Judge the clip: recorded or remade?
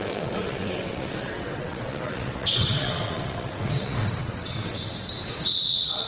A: remade